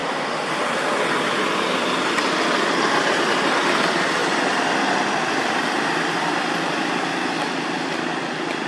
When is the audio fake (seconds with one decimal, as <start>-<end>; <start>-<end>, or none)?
0.0-0.5